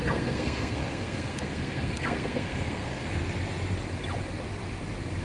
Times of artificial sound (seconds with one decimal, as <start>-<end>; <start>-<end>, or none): 0.0-3.2